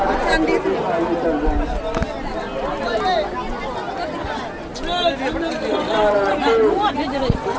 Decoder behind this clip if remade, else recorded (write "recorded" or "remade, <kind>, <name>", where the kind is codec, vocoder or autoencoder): recorded